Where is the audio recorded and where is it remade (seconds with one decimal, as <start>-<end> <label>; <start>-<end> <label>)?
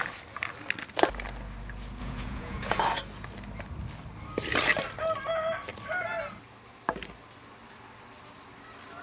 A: 0.0-2.0 recorded; 2.0-2.8 remade; 2.8-9.0 recorded